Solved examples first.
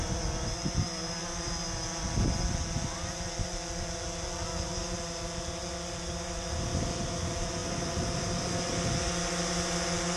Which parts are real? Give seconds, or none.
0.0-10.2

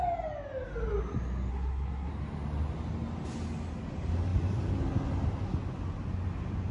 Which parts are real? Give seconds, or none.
0.0-1.5; 2.1-6.7

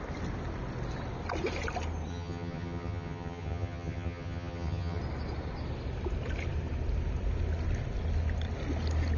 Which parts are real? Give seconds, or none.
0.0-2.1; 5.0-9.2

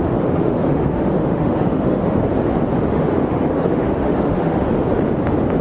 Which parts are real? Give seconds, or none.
2.2-2.9; 4.7-5.6

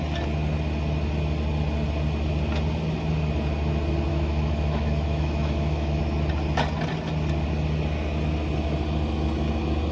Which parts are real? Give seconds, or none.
0.0-4.1; 6.0-9.9

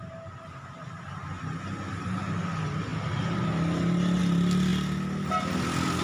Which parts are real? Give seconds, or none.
0.0-6.0

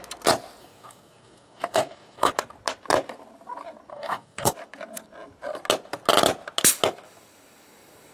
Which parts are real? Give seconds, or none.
0.0-0.6; 2.3-3.9; 4.5-8.1